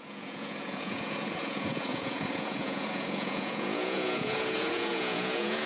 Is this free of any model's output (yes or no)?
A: no